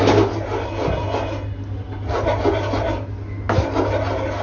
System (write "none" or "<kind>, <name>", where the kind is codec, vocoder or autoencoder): none